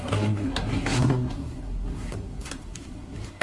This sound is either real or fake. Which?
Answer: fake